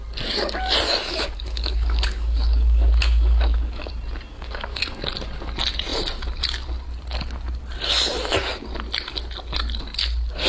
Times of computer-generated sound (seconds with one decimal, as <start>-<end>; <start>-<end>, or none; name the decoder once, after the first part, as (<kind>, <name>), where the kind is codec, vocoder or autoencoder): 1.1-3.9 (codec, DAC); 4.3-4.8